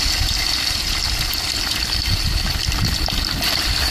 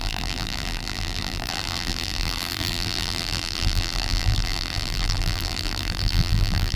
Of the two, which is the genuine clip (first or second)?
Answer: first